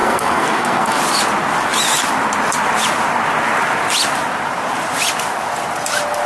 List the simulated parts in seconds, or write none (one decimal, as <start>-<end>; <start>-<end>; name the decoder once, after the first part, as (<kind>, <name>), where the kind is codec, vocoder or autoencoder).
0.0-1.0 (codec, SNAC)